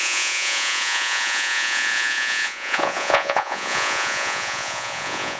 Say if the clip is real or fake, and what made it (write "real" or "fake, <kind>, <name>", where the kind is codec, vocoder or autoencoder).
fake, vocoder, Vocos